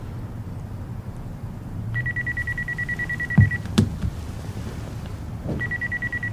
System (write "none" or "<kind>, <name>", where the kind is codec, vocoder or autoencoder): none